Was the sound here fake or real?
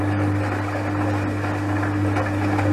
real